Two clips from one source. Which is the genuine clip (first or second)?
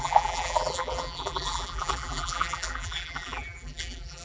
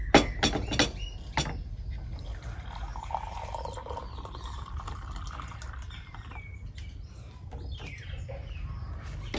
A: second